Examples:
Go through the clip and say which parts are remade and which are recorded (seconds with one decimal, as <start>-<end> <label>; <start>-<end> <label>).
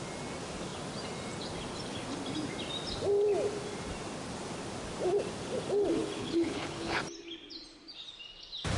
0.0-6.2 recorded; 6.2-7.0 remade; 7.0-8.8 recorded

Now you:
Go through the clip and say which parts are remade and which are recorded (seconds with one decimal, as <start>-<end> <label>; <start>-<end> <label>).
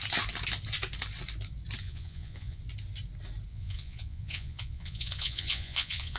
0.0-1.8 recorded; 1.8-2.6 remade; 2.6-3.5 recorded; 3.5-6.2 remade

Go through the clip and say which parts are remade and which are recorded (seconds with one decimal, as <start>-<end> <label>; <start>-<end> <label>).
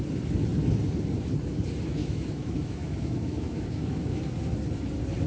0.0-2.0 recorded; 2.0-4.2 remade; 4.2-5.3 recorded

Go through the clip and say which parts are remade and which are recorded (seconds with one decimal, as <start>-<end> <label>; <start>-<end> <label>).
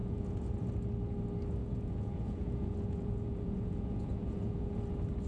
0.0-0.7 remade; 0.7-1.6 recorded; 1.6-4.8 remade; 4.8-5.3 recorded